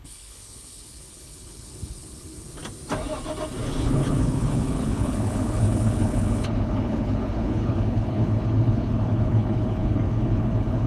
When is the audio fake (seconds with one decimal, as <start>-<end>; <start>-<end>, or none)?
0.0-2.6; 3.8-10.9